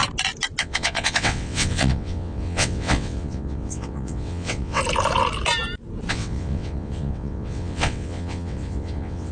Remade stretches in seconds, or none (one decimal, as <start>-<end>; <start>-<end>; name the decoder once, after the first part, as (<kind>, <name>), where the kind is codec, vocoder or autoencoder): 0.6-4.8 (vocoder, WaveNeXt); 6.1-9.3